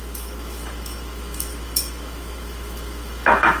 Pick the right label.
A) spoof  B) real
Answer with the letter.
A